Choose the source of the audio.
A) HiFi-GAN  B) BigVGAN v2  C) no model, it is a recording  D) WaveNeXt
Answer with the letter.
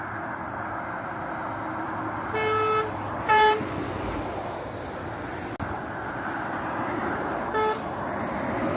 C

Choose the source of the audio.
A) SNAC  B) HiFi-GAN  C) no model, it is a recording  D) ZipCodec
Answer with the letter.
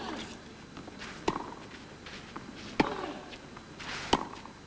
C